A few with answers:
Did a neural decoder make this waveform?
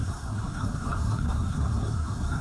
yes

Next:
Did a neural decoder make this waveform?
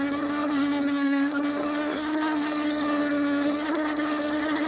yes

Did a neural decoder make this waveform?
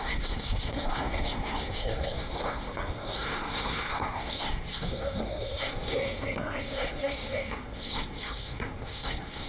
yes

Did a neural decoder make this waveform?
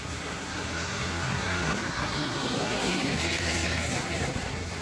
yes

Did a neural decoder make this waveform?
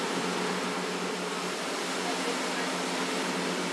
no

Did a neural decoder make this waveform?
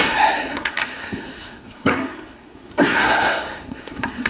yes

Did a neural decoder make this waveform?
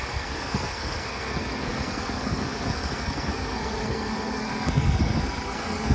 yes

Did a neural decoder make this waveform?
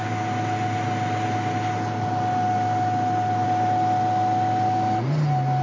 no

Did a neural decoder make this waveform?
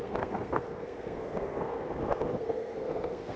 yes